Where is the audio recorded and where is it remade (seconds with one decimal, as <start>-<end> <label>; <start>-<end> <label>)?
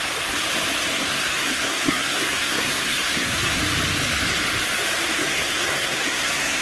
0.0-0.9 recorded; 0.9-3.6 remade; 3.6-5.2 recorded; 5.2-6.6 remade